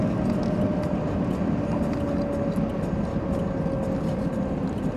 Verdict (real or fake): real